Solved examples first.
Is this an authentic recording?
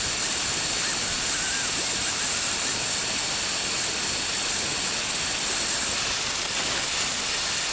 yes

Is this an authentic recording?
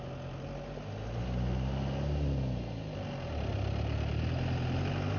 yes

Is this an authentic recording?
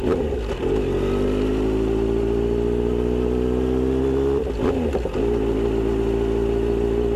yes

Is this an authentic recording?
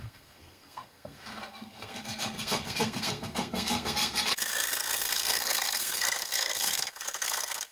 no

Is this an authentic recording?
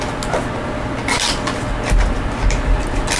yes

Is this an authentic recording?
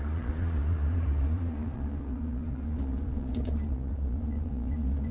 no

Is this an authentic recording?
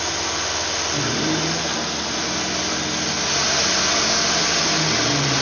yes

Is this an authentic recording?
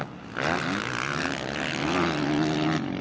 yes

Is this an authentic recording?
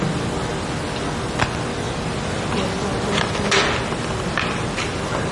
yes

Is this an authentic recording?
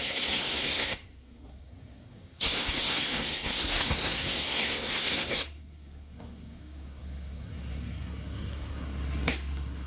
no